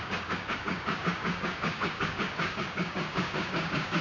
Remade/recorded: remade